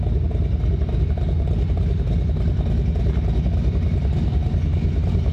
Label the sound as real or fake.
real